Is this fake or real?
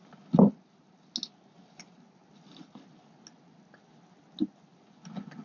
real